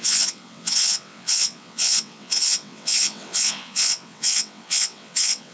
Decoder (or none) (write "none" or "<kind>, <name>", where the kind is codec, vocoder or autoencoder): vocoder, WaveNeXt